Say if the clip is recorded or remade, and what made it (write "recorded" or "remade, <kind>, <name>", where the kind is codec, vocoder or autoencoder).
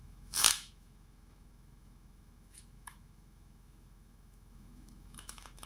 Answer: remade, autoencoder, DAC-VAE